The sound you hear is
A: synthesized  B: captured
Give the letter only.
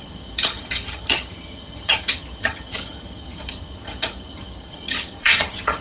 A